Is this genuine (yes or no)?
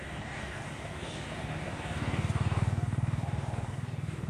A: no